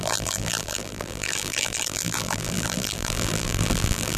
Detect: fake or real fake